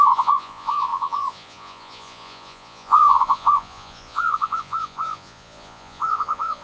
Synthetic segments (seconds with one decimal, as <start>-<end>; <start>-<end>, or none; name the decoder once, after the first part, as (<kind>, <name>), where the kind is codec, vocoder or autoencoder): 0.0-6.6 (vocoder, Vocos)